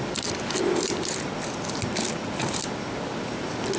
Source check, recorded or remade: recorded